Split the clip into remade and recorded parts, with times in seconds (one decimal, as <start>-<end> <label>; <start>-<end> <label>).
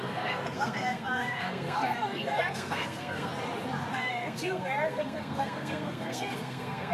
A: 0.0-3.3 remade; 3.3-3.9 recorded; 3.9-6.9 remade